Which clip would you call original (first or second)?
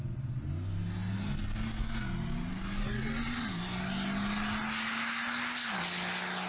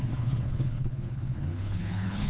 first